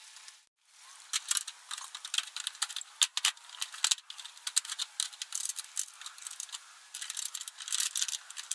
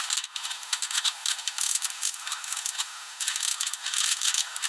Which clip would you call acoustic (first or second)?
first